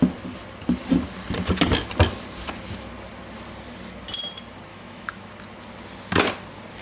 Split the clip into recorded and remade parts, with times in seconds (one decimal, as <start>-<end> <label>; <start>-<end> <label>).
0.0-4.7 recorded; 4.7-5.3 remade; 5.3-6.8 recorded